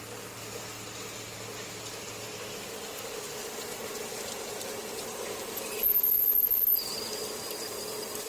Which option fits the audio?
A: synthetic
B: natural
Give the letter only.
B